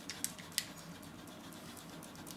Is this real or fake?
real